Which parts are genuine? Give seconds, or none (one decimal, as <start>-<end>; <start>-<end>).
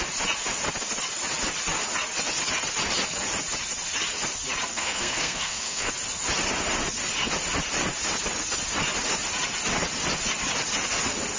0.0-4.7; 5.9-11.4